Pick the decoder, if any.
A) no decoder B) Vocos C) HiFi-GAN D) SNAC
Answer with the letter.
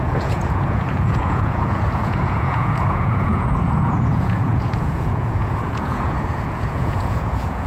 B